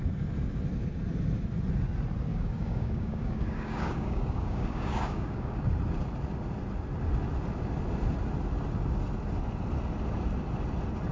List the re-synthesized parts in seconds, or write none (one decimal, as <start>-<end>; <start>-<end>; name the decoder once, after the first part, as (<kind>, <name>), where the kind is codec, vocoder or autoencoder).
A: 2.3-5.7 (codec, DAC)